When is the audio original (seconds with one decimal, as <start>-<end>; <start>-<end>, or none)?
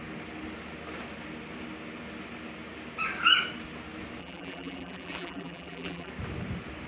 0.0-4.2; 6.1-6.9